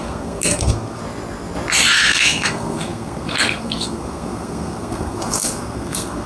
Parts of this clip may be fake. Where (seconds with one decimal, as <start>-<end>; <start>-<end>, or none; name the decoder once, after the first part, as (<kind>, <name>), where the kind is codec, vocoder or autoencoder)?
0.0-1.0 (codec, SNAC); 2.0-6.3